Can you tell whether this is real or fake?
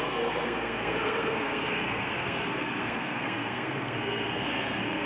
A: fake